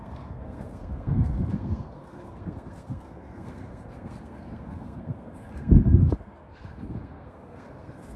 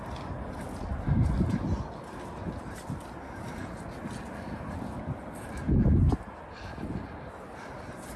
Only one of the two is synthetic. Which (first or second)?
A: first